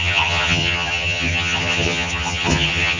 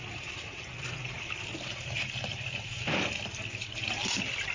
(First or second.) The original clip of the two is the second